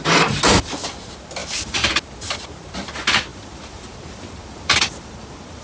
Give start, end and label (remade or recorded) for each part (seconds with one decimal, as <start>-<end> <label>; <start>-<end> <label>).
0.0-1.4 recorded; 1.4-1.9 remade; 1.9-3.3 recorded; 3.3-5.6 remade